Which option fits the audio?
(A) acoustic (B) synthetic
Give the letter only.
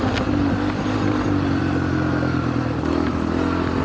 A